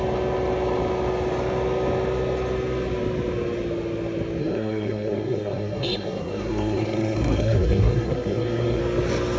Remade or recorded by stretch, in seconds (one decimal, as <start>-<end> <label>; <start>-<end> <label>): 0.0-4.4 recorded; 4.4-8.8 remade; 8.8-9.4 recorded